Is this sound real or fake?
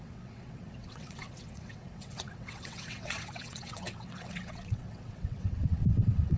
fake